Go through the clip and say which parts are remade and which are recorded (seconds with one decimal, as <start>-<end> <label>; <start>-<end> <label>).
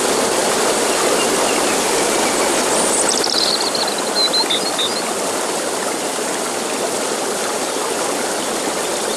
0.0-9.2 recorded